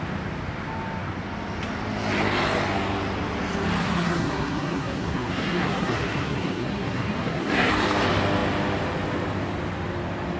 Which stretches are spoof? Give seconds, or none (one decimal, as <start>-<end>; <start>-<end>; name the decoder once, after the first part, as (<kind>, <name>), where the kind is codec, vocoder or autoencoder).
3.8-7.7 (codec, SNAC)